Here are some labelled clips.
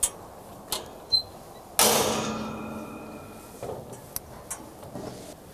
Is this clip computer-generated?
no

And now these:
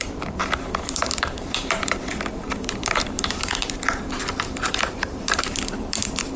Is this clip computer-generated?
yes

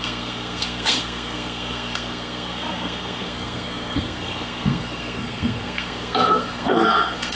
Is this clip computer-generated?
yes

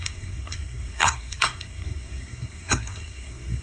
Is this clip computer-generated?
yes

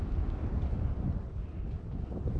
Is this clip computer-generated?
no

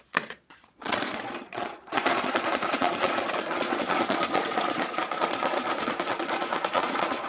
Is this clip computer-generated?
yes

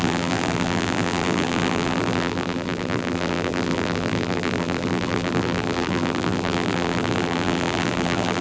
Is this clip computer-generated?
yes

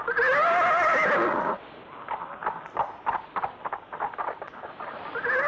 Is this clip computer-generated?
no